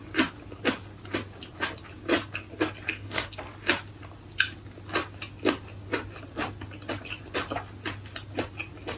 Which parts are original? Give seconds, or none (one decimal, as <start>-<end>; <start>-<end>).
0.0-2.9; 3.4-9.0